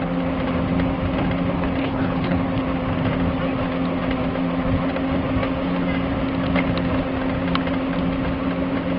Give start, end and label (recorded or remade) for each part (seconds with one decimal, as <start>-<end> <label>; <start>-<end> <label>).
0.0-1.8 recorded; 1.8-2.4 remade; 2.4-9.0 recorded